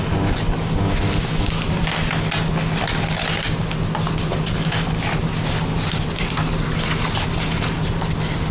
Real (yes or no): yes